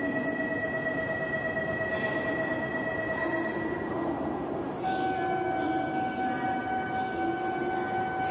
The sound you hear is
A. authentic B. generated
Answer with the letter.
A